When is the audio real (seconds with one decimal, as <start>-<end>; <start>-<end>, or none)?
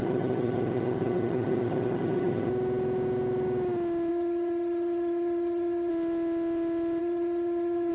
2.5-4.1; 5.9-7.0